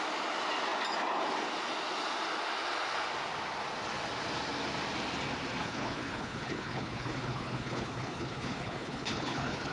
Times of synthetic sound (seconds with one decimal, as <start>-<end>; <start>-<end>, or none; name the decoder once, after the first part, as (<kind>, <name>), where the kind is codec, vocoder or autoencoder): 5.6-9.7 (codec, HILCodec)